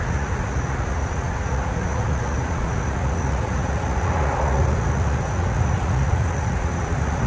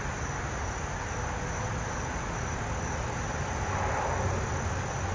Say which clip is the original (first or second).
second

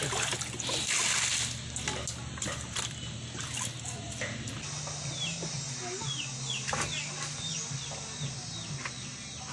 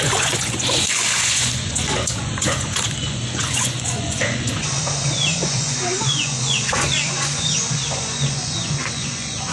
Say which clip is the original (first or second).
first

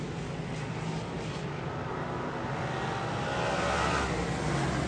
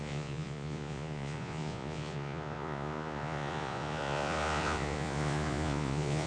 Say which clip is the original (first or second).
first